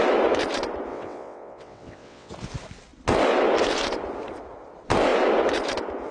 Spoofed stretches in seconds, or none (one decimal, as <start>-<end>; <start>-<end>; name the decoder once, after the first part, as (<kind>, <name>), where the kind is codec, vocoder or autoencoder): 0.9-2.3 (vocoder, WaveNeXt)